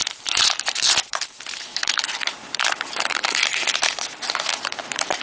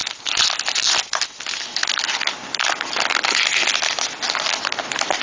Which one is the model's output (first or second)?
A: first